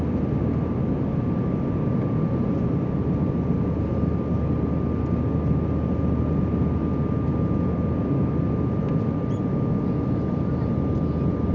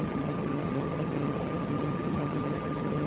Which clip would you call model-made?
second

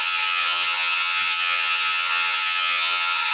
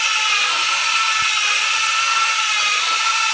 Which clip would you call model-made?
first